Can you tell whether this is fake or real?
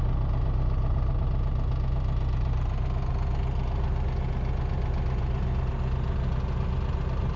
real